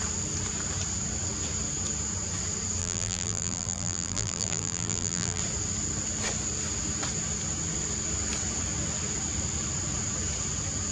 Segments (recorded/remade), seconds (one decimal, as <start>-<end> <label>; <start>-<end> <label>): 0.0-2.8 recorded; 2.8-5.4 remade; 5.4-10.9 recorded